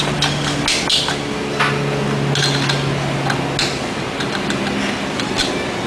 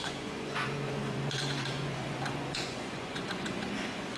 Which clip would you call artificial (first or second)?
second